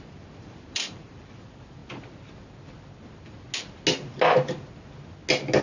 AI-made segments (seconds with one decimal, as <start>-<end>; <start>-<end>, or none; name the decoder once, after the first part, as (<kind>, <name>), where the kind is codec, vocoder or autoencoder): 0.0-1.8 (vocoder, BigVGAN v2)